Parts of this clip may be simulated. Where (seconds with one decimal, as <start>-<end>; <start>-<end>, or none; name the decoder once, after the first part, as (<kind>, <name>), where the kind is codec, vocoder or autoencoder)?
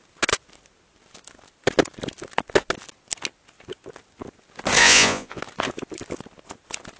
4.8-5.4 (vocoder, Vocos)